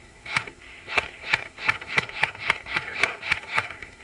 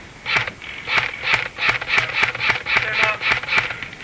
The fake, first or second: first